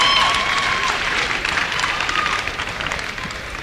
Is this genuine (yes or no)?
no